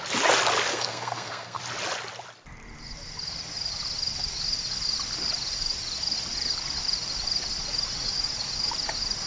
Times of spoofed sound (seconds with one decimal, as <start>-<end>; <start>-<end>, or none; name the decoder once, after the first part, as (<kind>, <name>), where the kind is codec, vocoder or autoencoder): 0.7-1.6 (codec, SNAC)